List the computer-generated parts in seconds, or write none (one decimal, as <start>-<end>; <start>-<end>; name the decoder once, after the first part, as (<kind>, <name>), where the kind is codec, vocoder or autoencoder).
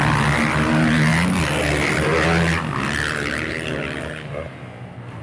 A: none